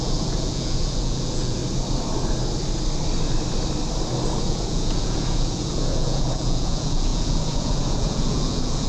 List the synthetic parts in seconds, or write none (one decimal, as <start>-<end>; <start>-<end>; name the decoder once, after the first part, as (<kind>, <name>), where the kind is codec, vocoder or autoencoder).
0.0-1.6 (vocoder, Vocos); 4.4-8.9